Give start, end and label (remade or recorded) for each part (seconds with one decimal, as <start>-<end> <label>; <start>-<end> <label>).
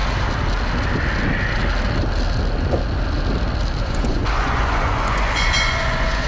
0.0-3.8 recorded; 3.8-6.3 remade